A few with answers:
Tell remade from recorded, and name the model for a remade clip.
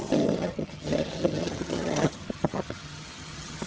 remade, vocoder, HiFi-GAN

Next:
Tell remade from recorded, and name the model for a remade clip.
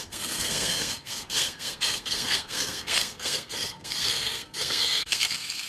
remade, codec, SNAC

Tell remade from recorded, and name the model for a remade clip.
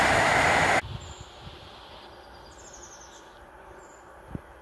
recorded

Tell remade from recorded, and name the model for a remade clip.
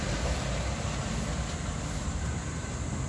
recorded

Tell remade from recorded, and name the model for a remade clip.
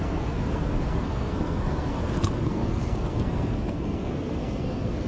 remade, codec, SNAC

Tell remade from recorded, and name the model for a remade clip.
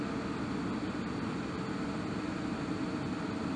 recorded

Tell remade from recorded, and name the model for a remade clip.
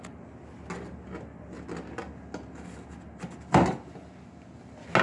recorded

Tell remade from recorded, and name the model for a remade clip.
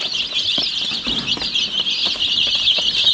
recorded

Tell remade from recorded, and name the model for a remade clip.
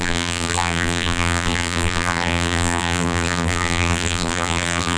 remade, vocoder, BigVGAN v2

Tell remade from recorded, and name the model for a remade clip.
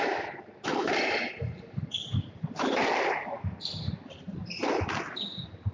recorded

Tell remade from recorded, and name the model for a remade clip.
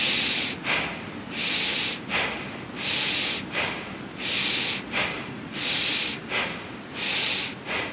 recorded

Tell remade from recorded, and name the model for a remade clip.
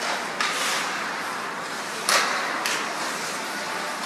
remade, vocoder, BigVGAN v2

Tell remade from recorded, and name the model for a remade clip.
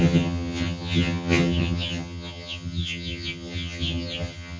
remade, vocoder, HiFi-GAN